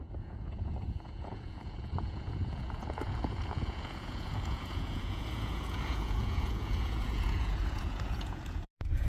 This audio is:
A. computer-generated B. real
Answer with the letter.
A